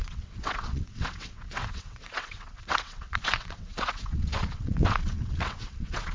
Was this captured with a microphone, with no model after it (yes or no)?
no